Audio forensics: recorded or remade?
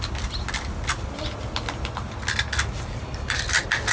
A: recorded